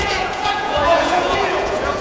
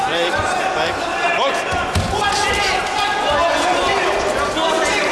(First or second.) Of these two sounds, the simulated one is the first